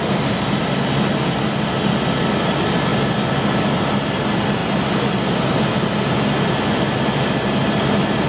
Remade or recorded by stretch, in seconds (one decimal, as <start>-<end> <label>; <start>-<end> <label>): 0.0-8.3 recorded